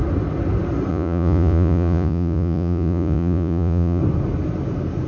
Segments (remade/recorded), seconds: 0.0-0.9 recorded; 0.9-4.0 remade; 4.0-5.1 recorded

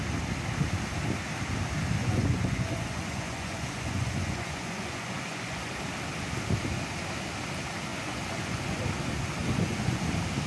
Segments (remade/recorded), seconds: 0.0-2.0 recorded; 2.0-5.7 remade; 5.7-7.9 recorded; 7.9-8.8 remade; 8.8-9.4 recorded; 9.4-10.1 remade; 10.1-10.5 recorded

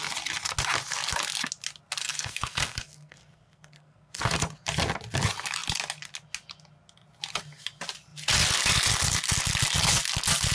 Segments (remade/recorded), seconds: 0.0-2.0 recorded; 2.0-4.2 remade; 4.2-10.5 recorded

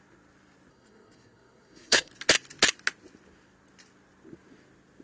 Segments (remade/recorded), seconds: 0.0-0.7 recorded; 0.7-2.1 remade; 2.1-5.0 recorded